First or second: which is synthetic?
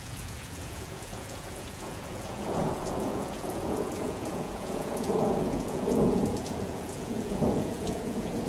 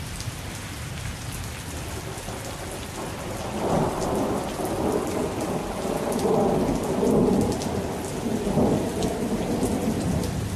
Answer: first